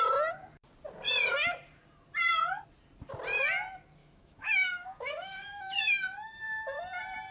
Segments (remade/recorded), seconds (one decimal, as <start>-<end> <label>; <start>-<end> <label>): 0.0-4.0 recorded; 4.0-6.8 remade; 6.8-7.3 recorded